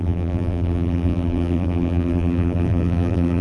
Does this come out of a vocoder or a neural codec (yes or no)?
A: yes